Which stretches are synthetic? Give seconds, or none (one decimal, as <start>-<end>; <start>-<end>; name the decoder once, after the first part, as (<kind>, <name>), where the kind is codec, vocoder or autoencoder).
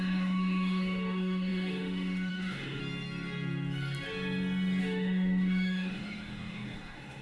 0.0-2.8 (autoencoder, DAC-VAE); 4.8-7.2